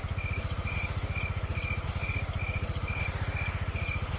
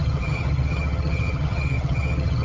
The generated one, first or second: second